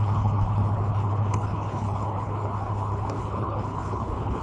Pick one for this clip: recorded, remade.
remade